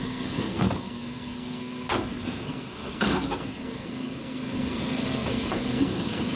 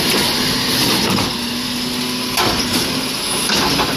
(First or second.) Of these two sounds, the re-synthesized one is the first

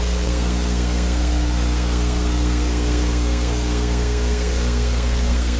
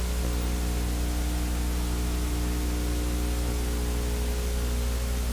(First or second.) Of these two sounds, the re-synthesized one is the first